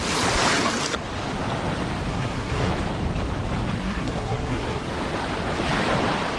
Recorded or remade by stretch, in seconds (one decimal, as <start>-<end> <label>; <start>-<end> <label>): 0.0-2.1 recorded; 2.1-2.7 remade; 2.7-3.8 recorded; 3.8-4.8 remade; 4.8-6.4 recorded